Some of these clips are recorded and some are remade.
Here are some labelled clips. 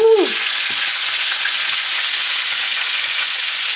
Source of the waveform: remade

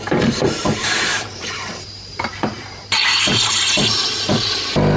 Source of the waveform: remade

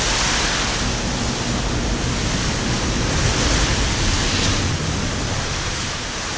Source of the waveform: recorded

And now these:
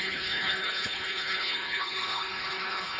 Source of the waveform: remade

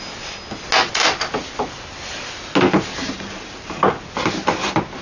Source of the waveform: recorded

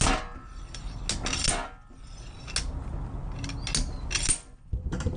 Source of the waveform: recorded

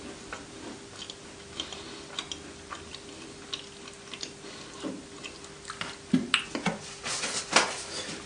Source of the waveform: recorded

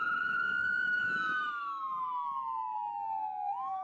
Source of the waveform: remade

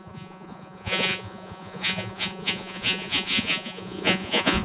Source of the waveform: remade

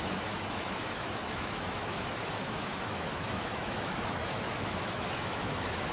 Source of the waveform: remade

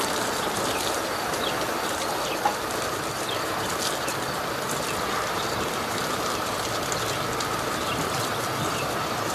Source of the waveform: recorded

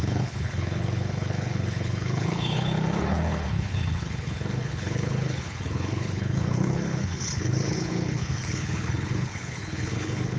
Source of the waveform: remade